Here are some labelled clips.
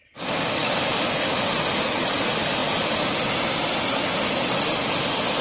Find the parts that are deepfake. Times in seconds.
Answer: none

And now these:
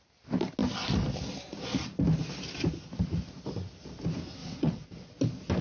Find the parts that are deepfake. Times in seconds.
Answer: 4.4-5.1 (vocoder, WaveNeXt)

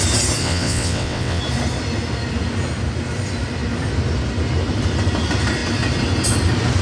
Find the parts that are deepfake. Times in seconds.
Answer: 0.4-1.4 (vocoder, WaveNeXt)

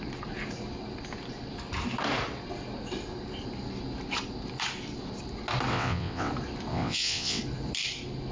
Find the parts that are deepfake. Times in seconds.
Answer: 5.7-6.3 (vocoder, WaveNeXt); 6.7-7.4

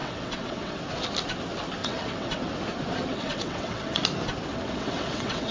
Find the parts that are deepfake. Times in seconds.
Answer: 0.0-0.8 (vocoder, WaveNeXt); 1.8-2.4; 3.1-4.0; 4.5-5.5

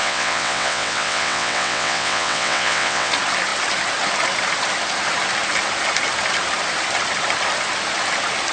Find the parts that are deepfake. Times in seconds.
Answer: 0.0-3.1 (vocoder, WaveNeXt)

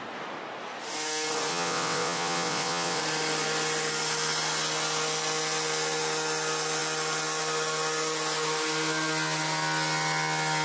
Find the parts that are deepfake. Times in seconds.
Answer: 1.5-3.0 (vocoder, WaveNeXt)